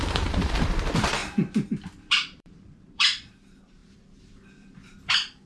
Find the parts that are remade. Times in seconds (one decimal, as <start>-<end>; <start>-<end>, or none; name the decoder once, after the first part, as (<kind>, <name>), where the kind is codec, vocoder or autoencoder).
0.0-1.2 (vocoder, BigVGAN v2); 1.8-5.5